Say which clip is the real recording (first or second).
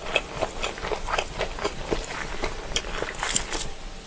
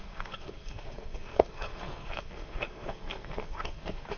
first